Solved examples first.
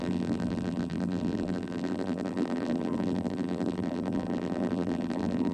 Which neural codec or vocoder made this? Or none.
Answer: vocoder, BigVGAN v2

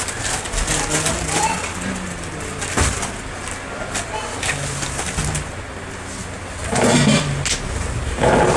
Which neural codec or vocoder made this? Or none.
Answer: none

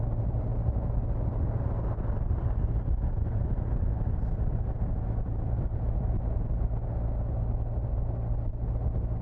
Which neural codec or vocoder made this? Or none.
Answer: none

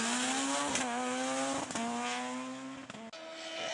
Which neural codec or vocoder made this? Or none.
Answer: none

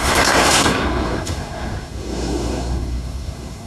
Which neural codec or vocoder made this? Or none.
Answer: codec, SNAC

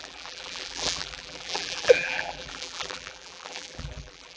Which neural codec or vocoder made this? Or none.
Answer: vocoder, BigVGAN v2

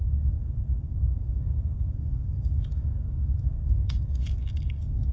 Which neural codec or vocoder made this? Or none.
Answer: codec, DAC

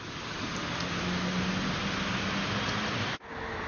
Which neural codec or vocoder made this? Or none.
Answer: none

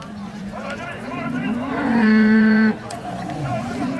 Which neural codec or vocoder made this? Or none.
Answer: vocoder, Vocos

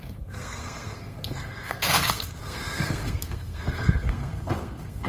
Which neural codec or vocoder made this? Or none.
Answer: codec, SNAC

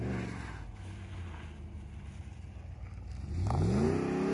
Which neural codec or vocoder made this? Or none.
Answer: none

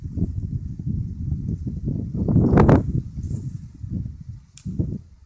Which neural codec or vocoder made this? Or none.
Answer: none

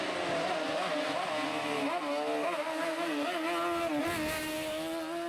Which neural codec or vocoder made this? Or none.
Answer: none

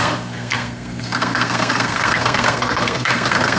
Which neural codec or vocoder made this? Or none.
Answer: codec, SNAC